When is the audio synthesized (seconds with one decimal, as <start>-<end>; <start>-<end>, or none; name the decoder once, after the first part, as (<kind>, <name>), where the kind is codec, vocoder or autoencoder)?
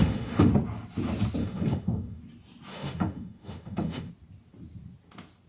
0.0-0.5 (autoencoder, DAC-VAE); 1.4-2.2; 2.7-4.1